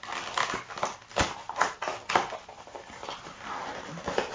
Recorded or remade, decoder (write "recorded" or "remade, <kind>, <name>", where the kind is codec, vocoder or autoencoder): recorded